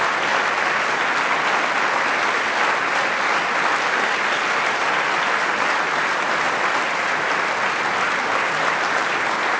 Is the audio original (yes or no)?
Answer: yes